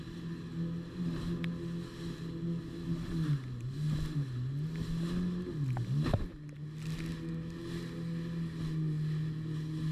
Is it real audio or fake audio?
real